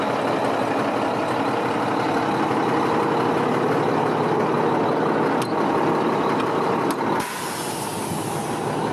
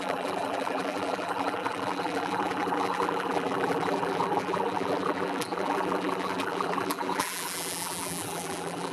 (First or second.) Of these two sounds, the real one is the first